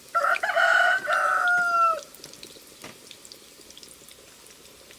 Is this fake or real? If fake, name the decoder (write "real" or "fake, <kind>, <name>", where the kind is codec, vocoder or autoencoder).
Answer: real